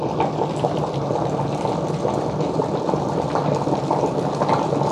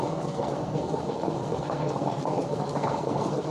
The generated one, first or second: second